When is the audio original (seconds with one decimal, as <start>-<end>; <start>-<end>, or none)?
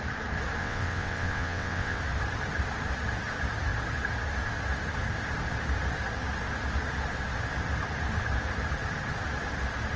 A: 0.0-0.6; 2.0-10.0